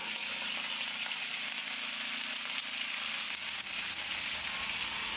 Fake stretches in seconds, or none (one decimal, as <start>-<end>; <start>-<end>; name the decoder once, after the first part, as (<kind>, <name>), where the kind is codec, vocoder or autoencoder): none